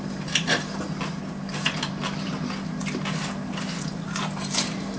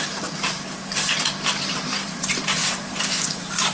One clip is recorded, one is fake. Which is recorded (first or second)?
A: first